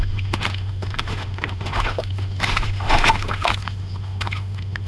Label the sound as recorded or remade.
remade